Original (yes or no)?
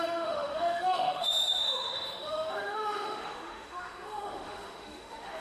no